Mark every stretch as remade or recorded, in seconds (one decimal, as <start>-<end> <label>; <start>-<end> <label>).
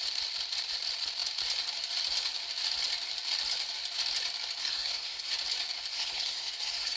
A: 0.0-4.6 recorded; 4.6-5.3 remade; 5.3-5.9 recorded; 5.9-7.0 remade